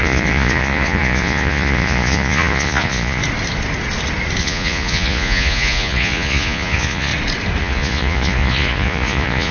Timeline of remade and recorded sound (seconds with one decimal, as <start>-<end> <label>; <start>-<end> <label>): 0.0-3.2 remade; 3.2-4.4 recorded; 4.4-7.1 remade; 7.1-7.6 recorded; 7.6-9.5 remade